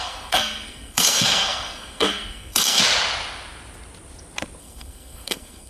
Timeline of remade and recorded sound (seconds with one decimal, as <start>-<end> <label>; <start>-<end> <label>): 0.0-2.8 remade; 2.8-4.6 recorded; 4.6-5.7 remade